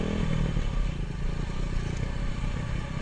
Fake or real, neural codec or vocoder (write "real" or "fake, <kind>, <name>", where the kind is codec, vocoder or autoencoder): real